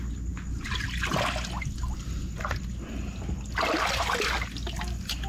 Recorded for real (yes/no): yes